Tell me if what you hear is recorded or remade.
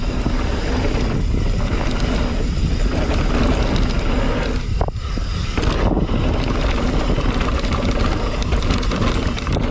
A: recorded